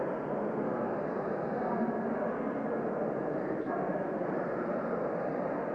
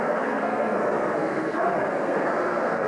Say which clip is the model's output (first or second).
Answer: second